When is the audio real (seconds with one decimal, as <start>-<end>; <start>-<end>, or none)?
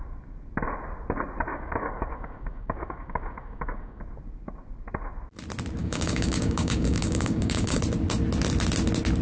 0.0-1.5; 4.0-5.8; 7.8-9.2